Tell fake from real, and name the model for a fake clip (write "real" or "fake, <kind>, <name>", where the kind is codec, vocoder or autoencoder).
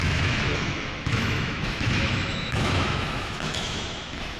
fake, autoencoder, DAC-VAE